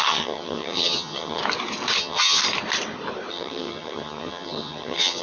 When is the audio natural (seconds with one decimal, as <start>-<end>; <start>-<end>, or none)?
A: 1.4-2.0; 2.4-3.3